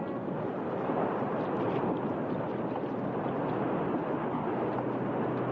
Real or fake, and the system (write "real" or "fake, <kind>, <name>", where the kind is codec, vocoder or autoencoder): real